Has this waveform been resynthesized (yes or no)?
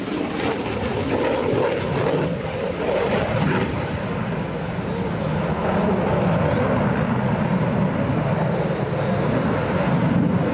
no